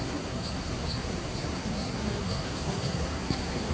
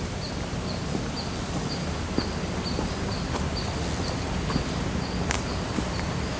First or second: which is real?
second